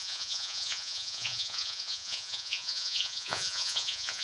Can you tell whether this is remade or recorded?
remade